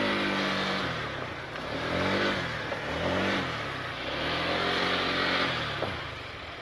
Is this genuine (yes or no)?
yes